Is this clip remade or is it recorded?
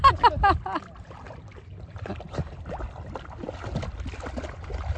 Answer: recorded